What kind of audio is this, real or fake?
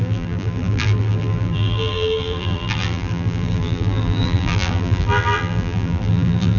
fake